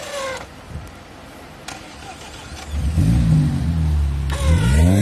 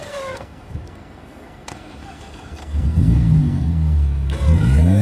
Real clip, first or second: first